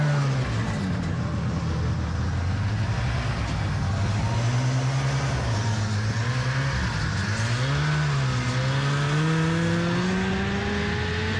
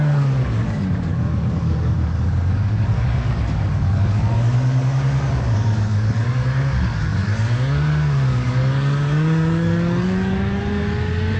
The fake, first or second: second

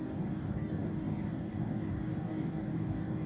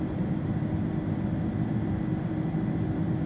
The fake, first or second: first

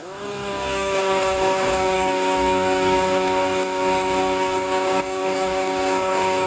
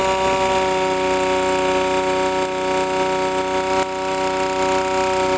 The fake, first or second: first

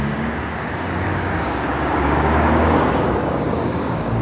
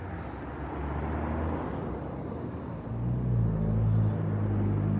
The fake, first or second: first